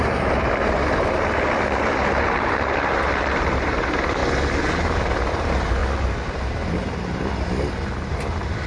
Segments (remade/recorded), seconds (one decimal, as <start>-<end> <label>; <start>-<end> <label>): 0.0-4.2 remade; 4.2-5.3 recorded; 5.3-5.8 remade; 5.8-8.1 recorded; 8.1-8.7 remade